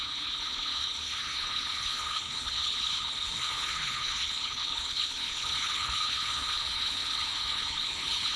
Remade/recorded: remade